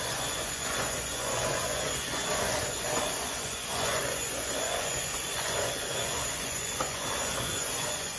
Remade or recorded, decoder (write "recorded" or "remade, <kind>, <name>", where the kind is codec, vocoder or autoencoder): remade, vocoder, Vocos